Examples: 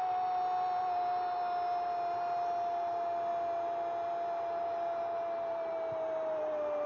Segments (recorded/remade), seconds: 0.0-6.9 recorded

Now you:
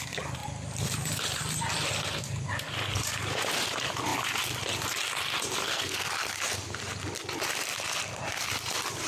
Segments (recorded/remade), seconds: 0.0-5.6 recorded; 5.6-6.1 remade; 6.1-9.1 recorded